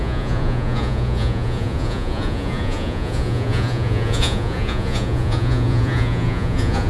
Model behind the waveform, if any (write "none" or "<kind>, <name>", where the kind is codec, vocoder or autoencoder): vocoder, Vocos